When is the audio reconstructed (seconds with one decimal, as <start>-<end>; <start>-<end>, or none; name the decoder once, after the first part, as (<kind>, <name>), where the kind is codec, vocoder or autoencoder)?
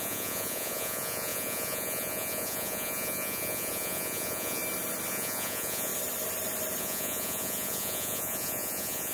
0.0-4.6 (vocoder, Vocos); 5.1-5.9; 6.8-9.1